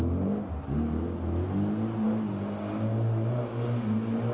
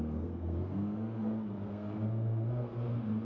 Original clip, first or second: first